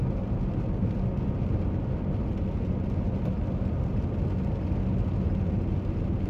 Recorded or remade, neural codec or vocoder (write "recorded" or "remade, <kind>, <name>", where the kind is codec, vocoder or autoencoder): recorded